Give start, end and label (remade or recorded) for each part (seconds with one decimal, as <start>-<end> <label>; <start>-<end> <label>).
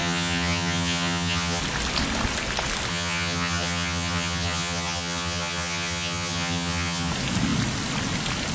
0.0-1.6 remade; 1.6-2.9 recorded; 2.9-7.1 remade; 7.1-8.5 recorded